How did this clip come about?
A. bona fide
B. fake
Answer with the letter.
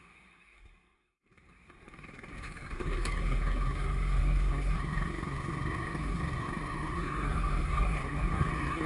B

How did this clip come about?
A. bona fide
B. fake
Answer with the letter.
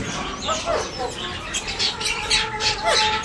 A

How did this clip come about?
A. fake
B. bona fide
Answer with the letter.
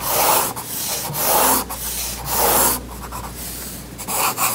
B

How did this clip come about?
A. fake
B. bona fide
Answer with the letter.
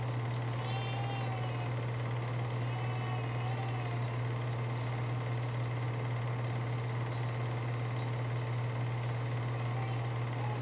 B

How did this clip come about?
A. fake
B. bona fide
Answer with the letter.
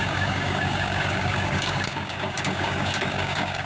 A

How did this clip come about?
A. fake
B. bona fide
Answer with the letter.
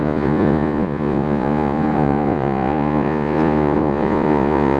A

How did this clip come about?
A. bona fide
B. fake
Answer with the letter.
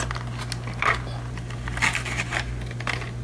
A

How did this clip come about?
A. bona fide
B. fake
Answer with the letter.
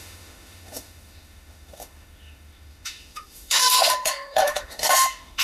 B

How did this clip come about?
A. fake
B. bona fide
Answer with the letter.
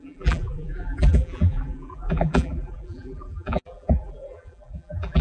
A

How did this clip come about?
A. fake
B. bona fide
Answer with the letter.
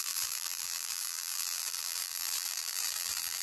A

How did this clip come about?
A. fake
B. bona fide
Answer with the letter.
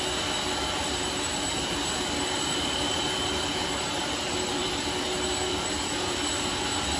A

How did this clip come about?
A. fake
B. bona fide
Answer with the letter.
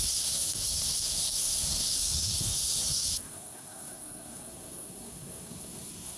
A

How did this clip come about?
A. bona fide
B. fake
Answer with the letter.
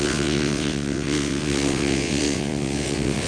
B